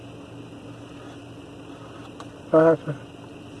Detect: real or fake real